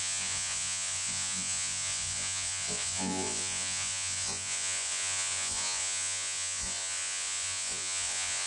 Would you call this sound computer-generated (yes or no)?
yes